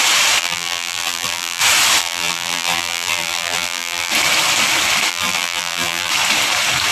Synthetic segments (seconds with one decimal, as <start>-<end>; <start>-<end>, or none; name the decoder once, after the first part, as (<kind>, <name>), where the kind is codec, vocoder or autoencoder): 0.4-1.6 (vocoder, BigVGAN v2); 2.0-4.1; 5.1-6.1